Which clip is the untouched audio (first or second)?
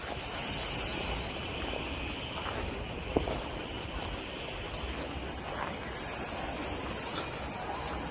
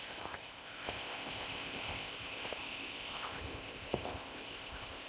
first